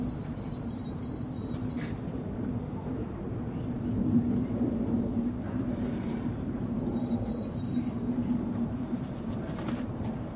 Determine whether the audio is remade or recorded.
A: remade